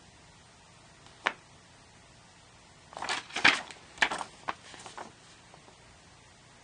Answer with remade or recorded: recorded